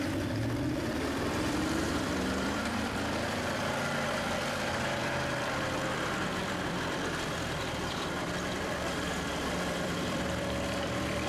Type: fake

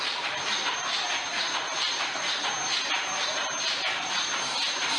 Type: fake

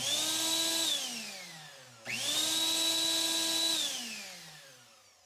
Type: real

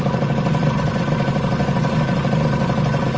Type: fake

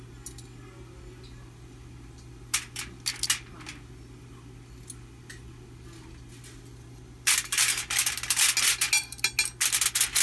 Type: real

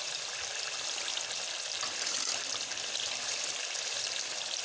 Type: real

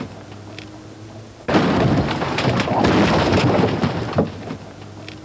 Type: fake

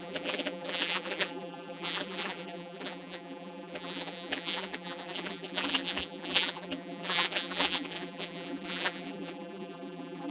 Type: fake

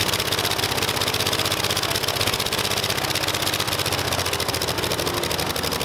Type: real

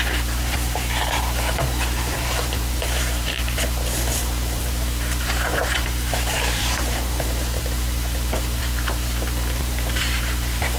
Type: fake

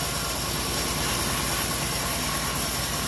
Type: real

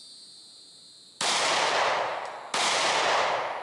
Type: real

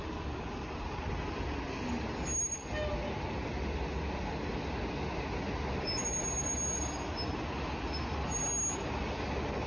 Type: real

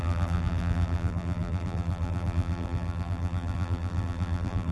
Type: fake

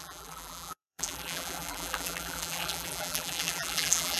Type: fake